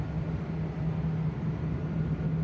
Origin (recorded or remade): recorded